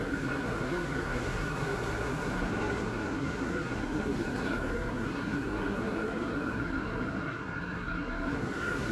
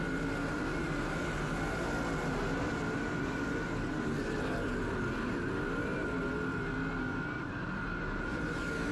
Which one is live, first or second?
second